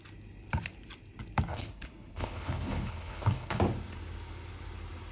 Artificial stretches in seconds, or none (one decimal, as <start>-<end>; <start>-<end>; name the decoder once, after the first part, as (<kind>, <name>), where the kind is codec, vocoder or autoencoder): 1.5-3.6 (codec, HILCodec)